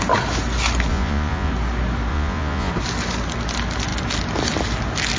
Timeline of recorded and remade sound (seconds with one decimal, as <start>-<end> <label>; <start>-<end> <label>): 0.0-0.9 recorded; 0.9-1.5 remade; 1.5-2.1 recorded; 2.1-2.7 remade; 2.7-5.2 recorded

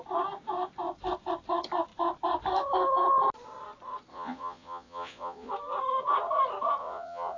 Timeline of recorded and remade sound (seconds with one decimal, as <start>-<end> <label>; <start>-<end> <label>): 0.0-4.1 recorded; 4.1-5.5 remade; 5.5-6.8 recorded; 6.8-7.4 remade

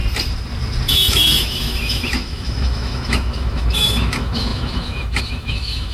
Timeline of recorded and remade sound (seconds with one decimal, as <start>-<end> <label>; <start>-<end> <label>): 0.0-0.9 recorded; 0.9-5.9 remade

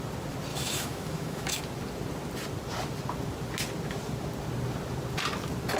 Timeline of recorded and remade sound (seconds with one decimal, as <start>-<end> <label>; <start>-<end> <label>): 0.0-0.5 recorded; 0.5-1.6 remade; 1.6-5.8 recorded

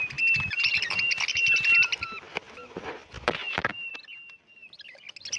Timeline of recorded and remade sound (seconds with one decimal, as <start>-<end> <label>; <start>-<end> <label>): 0.0-0.7 recorded; 0.7-3.9 remade; 3.9-5.4 recorded

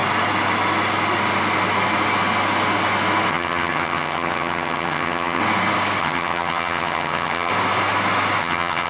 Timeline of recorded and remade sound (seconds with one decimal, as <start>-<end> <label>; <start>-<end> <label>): 0.0-3.3 recorded; 3.3-5.4 remade; 5.4-6.0 recorded; 6.0-7.5 remade; 7.5-8.4 recorded; 8.4-8.9 remade